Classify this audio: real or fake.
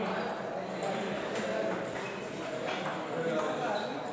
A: real